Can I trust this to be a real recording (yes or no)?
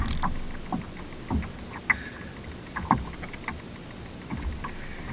yes